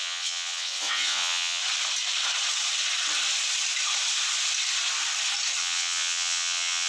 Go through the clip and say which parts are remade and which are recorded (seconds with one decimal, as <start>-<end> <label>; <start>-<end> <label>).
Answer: 0.0-1.6 remade; 1.6-5.6 recorded; 5.6-6.9 remade